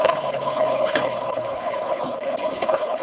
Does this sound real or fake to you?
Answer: fake